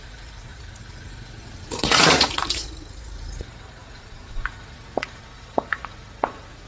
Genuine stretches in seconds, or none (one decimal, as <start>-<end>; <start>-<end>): none